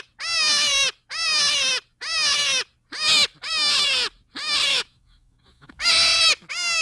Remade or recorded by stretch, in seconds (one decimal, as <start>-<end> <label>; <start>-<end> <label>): 0.0-4.7 recorded; 4.7-5.9 remade; 5.9-6.8 recorded